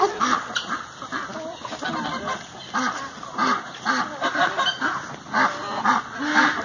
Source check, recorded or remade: recorded